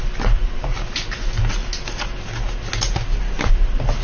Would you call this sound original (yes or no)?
yes